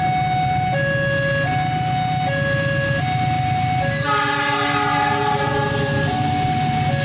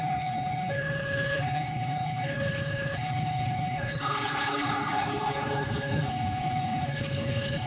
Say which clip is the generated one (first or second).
second